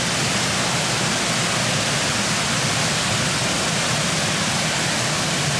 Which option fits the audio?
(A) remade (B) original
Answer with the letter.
B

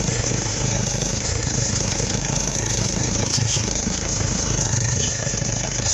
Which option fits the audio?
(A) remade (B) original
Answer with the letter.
A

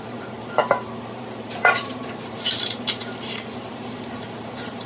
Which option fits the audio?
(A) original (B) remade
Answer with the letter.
B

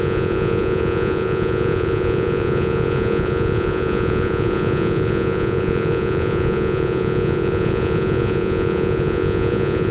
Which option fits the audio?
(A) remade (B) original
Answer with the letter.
A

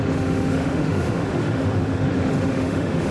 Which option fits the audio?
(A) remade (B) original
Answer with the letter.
A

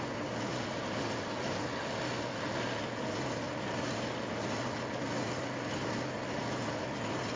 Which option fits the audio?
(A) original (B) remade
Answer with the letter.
A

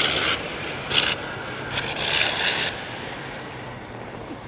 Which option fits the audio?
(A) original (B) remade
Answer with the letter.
A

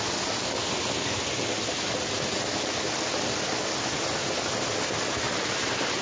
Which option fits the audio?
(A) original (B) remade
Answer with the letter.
A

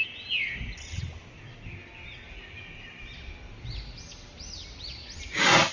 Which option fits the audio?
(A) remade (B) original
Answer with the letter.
B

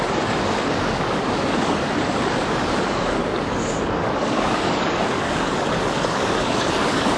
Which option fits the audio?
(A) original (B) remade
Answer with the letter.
B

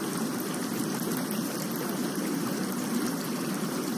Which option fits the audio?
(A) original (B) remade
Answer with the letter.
A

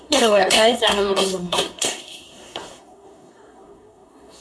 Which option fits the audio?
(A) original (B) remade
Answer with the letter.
B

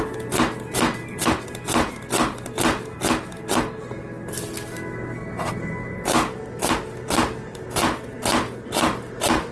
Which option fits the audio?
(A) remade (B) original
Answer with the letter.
B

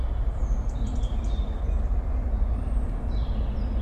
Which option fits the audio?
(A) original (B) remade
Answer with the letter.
B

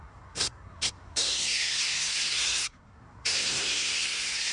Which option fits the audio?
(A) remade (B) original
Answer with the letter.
A